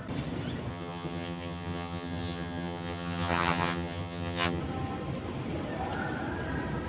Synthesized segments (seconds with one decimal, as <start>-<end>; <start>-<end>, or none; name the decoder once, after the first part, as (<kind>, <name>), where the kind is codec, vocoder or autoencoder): 0.7-4.6 (vocoder, HiFi-GAN)